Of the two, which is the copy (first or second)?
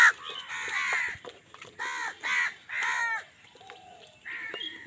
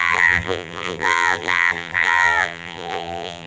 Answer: second